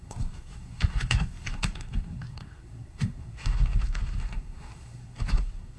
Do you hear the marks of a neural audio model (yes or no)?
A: yes